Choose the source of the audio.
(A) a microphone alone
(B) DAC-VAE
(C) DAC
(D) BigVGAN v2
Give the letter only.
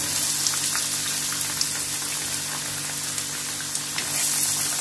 A